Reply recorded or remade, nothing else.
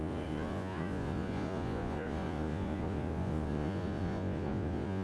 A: remade